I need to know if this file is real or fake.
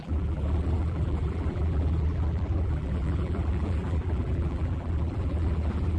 fake